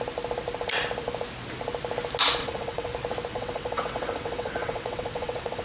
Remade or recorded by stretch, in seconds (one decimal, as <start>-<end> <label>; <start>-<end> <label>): 0.0-2.4 recorded; 2.4-2.9 remade; 2.9-3.3 recorded; 3.3-5.6 remade